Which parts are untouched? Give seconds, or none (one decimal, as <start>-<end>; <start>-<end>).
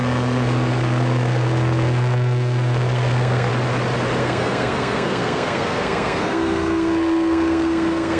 3.5-4.2